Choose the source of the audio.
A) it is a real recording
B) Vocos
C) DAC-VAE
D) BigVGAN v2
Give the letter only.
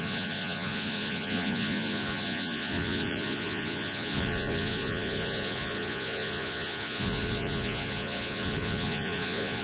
B